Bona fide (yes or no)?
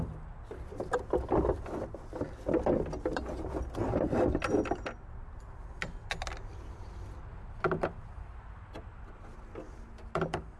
yes